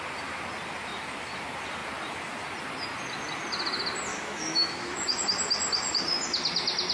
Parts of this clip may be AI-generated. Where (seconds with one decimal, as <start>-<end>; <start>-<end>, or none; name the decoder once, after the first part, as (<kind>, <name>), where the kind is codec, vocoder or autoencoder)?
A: 4.1-5.2 (autoencoder, DAC-VAE)